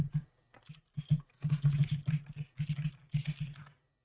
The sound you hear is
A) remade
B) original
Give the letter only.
B